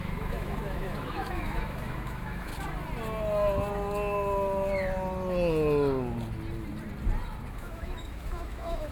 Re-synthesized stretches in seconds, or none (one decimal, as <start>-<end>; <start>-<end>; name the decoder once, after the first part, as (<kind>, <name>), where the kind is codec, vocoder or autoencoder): 0.0-2.5 (autoencoder, DAC-VAE); 7.5-8.9